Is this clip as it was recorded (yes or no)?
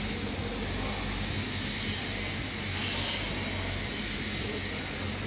yes